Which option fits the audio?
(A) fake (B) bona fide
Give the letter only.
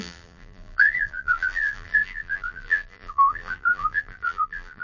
A